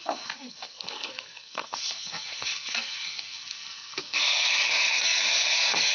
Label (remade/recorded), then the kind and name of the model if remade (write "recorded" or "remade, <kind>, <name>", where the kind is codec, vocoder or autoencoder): remade, codec, SNAC